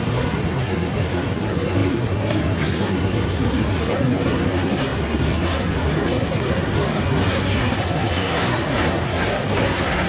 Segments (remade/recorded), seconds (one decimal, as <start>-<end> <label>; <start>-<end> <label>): 0.0-10.1 remade